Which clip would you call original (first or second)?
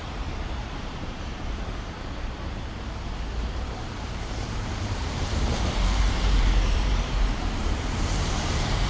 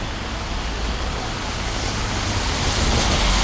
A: second